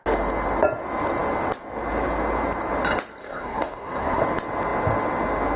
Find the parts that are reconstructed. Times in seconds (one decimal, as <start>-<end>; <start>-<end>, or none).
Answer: 3.2-4.2